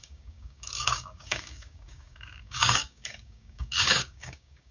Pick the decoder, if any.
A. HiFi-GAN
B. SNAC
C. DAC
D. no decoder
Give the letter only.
C